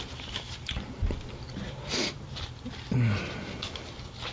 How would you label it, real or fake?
real